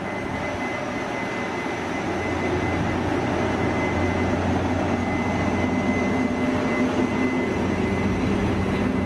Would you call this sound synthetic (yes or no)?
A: no